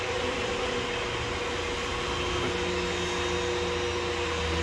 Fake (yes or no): no